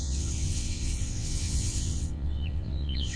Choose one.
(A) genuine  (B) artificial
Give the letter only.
B